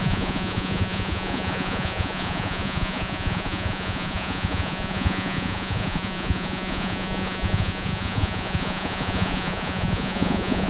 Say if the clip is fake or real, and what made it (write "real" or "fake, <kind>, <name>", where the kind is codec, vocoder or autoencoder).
fake, vocoder, Vocos